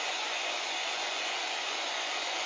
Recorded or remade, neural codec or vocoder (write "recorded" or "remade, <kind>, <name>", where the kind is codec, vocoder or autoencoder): remade, vocoder, Vocos